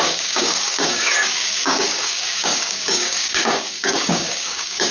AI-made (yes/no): yes